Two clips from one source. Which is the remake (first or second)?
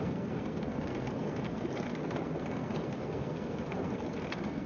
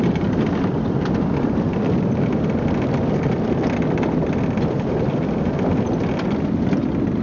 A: first